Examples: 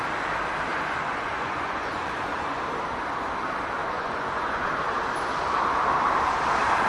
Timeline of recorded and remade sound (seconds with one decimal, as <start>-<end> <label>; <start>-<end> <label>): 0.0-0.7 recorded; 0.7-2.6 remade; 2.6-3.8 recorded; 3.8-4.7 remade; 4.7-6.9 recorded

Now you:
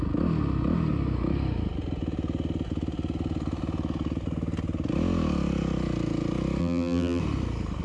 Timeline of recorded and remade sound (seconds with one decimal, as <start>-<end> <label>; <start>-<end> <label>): 0.0-6.6 recorded; 6.6-7.2 remade; 7.2-7.8 recorded

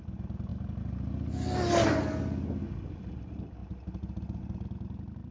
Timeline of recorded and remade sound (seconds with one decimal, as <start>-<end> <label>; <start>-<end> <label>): 0.0-5.3 recorded

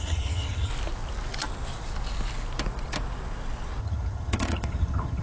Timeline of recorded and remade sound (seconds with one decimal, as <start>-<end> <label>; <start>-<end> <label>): 0.0-0.7 remade; 0.7-3.8 recorded; 3.8-5.2 remade

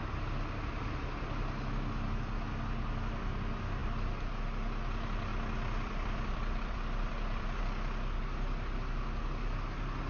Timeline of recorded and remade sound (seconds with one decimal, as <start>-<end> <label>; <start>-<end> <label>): 0.0-3.8 recorded; 3.8-4.3 remade; 4.3-5.3 recorded; 5.3-7.6 remade; 7.6-10.1 recorded

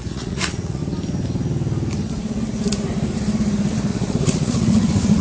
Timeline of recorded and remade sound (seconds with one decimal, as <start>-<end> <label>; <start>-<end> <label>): 0.0-0.8 remade; 0.8-3.9 recorded; 3.9-5.2 remade

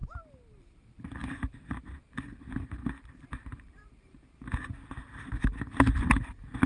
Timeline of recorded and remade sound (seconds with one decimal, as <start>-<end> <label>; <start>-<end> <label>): 0.0-1.2 recorded; 1.2-4.7 remade; 4.7-6.7 recorded